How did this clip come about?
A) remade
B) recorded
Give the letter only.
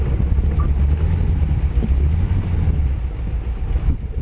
B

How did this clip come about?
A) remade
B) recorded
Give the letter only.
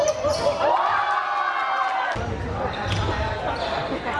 B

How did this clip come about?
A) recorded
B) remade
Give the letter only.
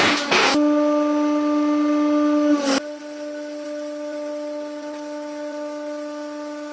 A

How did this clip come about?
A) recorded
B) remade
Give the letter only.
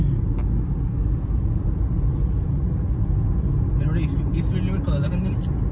A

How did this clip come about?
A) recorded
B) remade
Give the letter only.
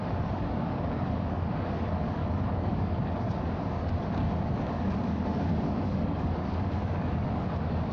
B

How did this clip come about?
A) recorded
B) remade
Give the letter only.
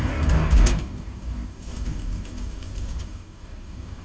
B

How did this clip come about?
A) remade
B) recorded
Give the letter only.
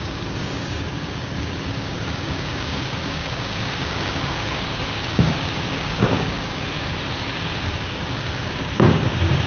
A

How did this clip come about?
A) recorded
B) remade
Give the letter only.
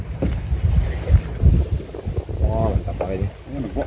A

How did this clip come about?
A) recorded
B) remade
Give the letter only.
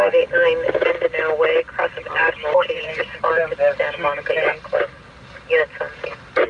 A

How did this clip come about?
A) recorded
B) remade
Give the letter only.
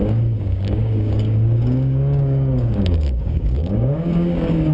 B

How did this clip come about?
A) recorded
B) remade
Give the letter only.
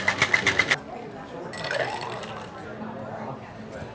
A